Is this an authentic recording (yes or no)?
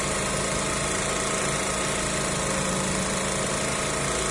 yes